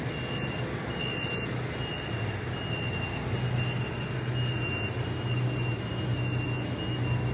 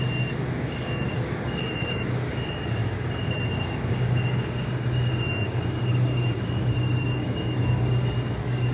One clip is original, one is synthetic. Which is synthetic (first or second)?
second